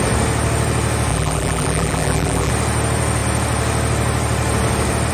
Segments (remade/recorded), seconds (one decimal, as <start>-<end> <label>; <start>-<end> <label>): 0.0-1.1 recorded; 1.1-2.5 remade; 2.5-5.1 recorded